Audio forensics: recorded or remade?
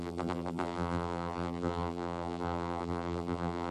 remade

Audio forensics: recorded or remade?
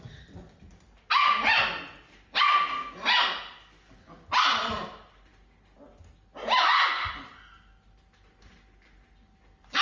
recorded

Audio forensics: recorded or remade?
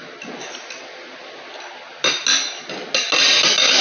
recorded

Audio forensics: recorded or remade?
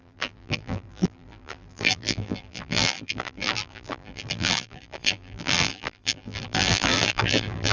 remade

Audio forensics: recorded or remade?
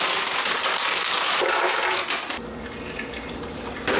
recorded